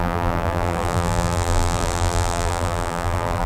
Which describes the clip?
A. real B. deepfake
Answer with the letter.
B